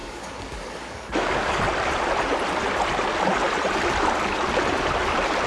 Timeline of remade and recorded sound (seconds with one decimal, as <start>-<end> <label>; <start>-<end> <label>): 0.0-1.6 remade; 1.6-5.5 recorded